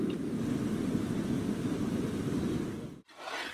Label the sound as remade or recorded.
recorded